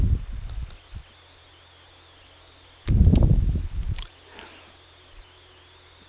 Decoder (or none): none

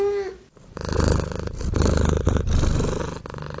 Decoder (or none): none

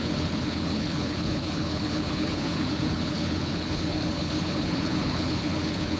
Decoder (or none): codec, HILCodec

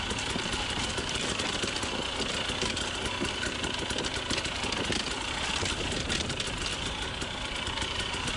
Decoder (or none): none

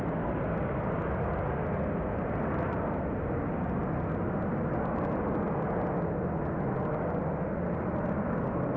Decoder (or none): none